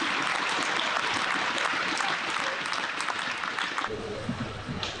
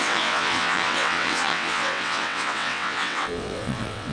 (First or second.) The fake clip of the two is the second